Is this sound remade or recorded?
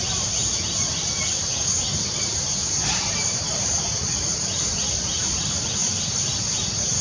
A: remade